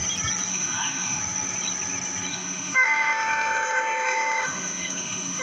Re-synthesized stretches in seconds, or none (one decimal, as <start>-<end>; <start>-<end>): 0.5-1.2; 2.3-5.4